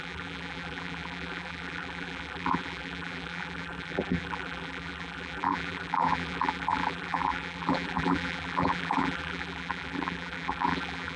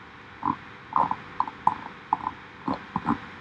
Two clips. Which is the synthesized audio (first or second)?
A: first